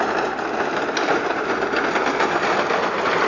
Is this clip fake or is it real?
real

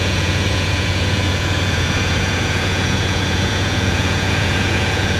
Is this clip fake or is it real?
fake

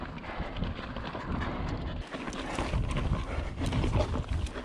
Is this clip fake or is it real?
real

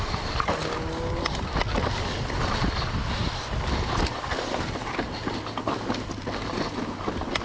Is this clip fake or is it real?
real